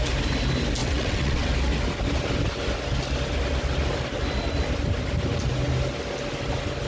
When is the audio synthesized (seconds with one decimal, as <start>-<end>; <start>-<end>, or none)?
0.8-1.5

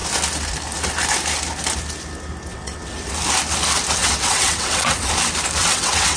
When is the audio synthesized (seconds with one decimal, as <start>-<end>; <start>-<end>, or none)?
2.5-3.1; 4.0-5.1; 5.6-6.2

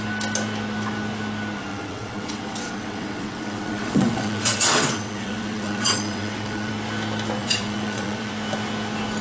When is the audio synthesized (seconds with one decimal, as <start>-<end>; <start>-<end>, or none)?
1.7-6.7; 7.4-8.3

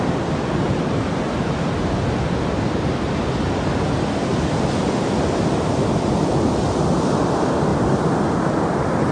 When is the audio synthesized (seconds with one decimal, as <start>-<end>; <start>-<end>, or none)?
none

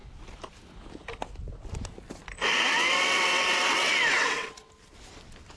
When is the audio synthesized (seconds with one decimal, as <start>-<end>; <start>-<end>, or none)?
2.7-4.7

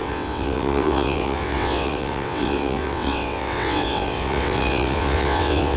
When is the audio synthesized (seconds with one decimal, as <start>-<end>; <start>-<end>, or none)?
0.0-5.8